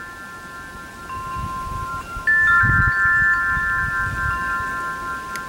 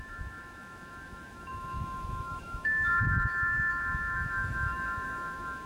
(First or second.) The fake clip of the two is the second